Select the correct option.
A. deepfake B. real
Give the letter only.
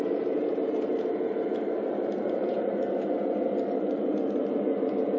A